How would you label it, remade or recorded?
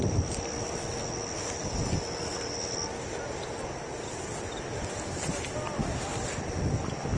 recorded